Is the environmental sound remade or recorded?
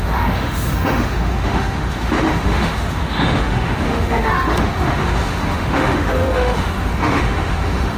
remade